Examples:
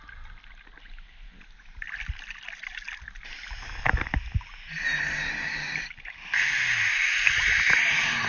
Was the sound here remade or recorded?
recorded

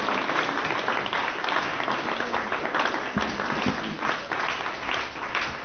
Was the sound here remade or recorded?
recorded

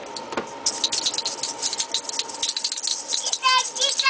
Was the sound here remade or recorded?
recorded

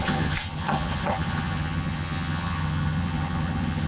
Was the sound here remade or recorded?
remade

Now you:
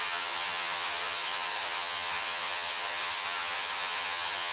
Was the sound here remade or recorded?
remade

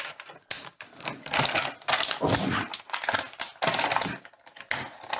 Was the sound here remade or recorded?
recorded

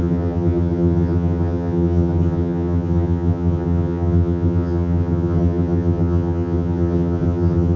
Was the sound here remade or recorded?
remade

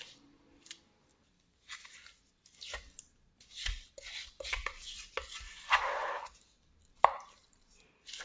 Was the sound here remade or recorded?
recorded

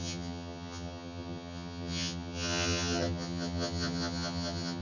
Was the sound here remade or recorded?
remade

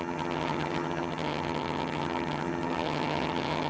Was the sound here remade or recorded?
remade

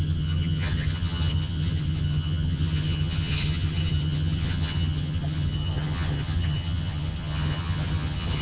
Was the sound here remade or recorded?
remade